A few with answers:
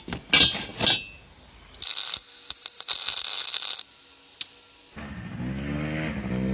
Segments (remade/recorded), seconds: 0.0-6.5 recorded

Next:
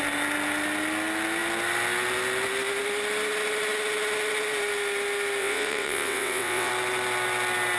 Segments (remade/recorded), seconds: 0.0-5.4 recorded; 5.4-6.7 remade; 6.7-7.8 recorded

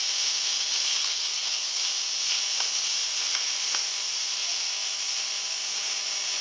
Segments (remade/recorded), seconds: 0.0-0.7 recorded; 0.7-1.8 remade; 1.8-6.4 recorded

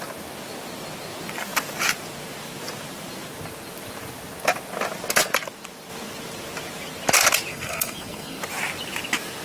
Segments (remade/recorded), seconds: 0.0-7.5 recorded; 7.5-8.4 remade; 8.4-9.4 recorded

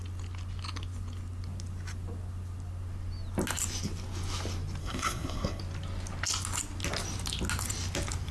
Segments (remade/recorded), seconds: 0.0-4.8 recorded; 4.8-5.6 remade; 5.6-8.3 recorded

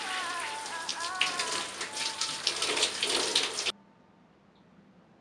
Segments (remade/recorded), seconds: 0.0-5.2 recorded